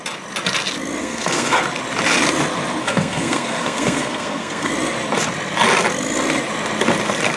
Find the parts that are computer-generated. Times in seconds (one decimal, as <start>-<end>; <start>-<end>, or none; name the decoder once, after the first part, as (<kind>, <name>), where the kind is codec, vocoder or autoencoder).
1.0-1.6 (codec, SNAC); 2.8-4.7